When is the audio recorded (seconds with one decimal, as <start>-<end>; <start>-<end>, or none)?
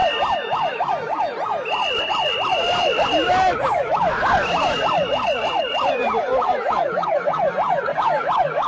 none